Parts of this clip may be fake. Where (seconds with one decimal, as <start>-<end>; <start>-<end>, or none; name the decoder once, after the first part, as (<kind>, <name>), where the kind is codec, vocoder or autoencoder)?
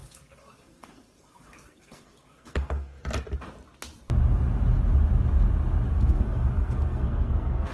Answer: 0.0-3.0 (codec, SNAC); 5.9-7.7